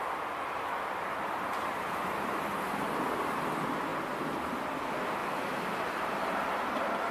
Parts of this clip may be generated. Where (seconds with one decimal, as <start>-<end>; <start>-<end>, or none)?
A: 5.2-6.1